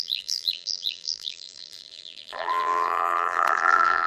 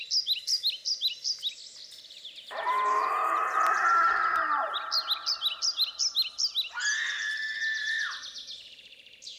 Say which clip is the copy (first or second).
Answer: first